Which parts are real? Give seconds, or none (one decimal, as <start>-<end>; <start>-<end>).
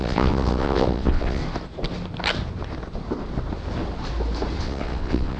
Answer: 1.4-4.6